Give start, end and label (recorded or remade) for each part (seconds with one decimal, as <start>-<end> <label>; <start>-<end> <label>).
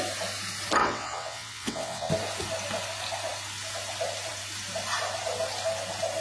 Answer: 0.0-0.8 recorded; 0.8-2.1 remade; 2.1-6.2 recorded